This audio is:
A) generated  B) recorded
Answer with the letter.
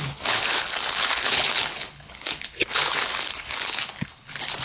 A